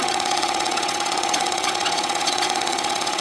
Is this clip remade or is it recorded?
remade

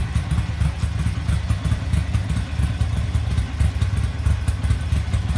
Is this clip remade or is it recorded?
recorded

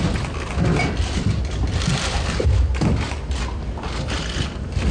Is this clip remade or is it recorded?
recorded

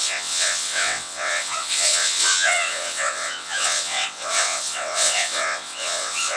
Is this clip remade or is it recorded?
remade